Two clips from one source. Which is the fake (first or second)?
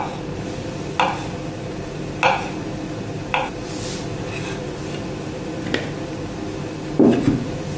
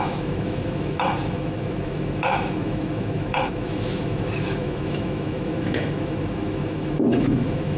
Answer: second